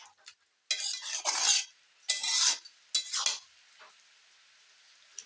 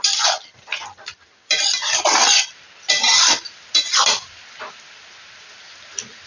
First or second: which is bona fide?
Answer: first